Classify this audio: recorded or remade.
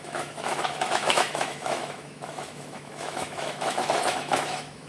remade